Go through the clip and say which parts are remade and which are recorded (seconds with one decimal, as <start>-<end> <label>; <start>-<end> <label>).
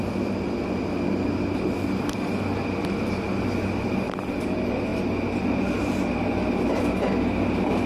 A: 0.0-7.9 recorded